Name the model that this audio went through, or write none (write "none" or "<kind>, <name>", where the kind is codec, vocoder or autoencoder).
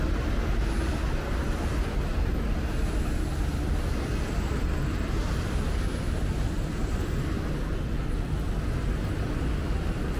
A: none